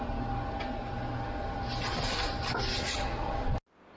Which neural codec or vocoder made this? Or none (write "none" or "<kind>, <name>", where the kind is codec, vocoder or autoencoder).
none